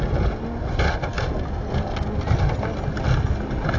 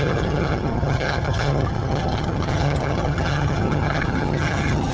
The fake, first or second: second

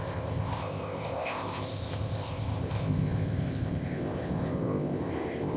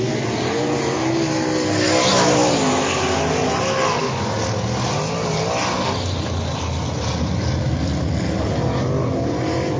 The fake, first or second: first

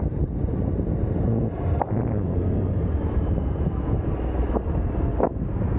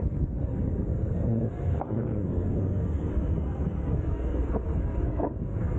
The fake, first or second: second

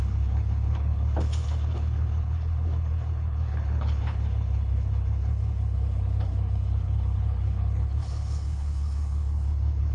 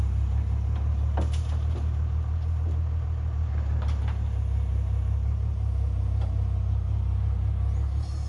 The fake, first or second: first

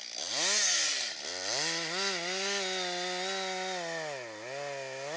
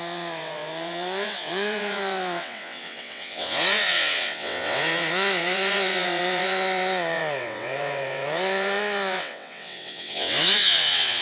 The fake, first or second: second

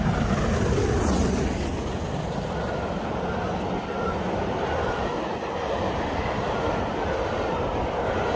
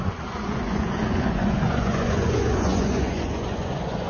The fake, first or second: second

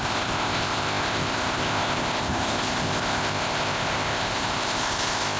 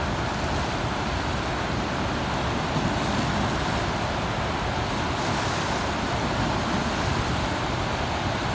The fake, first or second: first